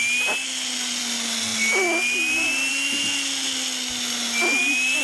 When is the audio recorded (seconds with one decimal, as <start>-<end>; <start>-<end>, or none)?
0.0-5.0